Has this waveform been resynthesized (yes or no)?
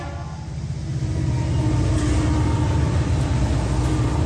no